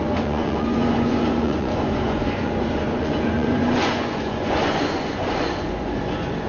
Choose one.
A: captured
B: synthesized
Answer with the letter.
B